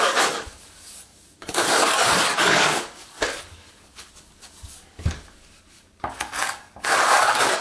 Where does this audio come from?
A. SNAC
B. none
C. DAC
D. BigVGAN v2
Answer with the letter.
C